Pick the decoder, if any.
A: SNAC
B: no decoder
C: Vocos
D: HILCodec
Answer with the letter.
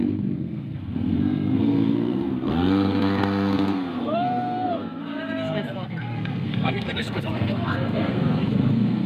A